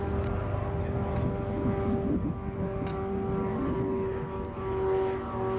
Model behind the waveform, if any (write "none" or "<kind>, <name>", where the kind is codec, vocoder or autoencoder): none